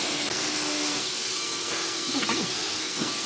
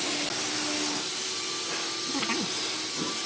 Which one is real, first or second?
second